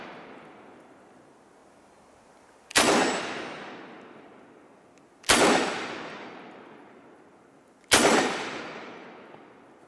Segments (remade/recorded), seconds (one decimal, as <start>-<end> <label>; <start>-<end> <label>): 0.0-8.1 recorded; 8.1-8.6 remade; 8.6-9.9 recorded